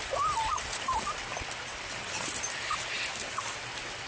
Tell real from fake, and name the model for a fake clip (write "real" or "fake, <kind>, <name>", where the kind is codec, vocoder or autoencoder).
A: real